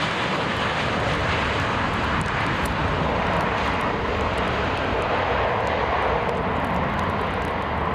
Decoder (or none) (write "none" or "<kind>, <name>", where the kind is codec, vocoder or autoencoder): none